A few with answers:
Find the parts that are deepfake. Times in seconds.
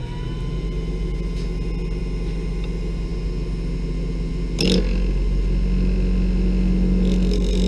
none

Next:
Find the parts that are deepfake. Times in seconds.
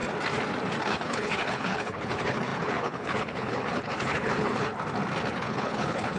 0.8-4.7 (codec, HILCodec); 5.3-6.2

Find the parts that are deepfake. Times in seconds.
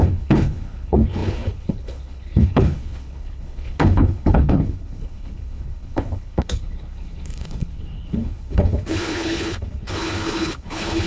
0.0-11.1 (codec, HILCodec)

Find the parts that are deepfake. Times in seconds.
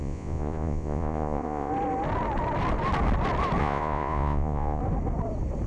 0.0-1.7 (vocoder, Vocos); 3.6-4.8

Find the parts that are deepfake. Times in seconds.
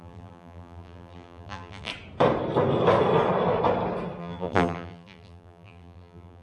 0.0-1.9 (vocoder, BigVGAN v2); 4.2-6.4